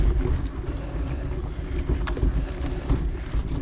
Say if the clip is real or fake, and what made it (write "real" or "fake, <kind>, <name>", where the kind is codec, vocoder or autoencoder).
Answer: real